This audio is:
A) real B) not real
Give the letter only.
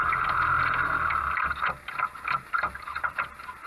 A